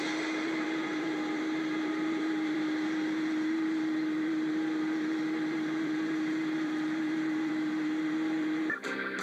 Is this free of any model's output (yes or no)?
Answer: no